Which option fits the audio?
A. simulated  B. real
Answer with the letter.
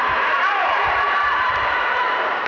A